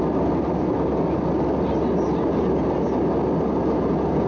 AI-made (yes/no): no